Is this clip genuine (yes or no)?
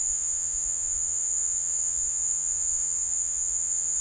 no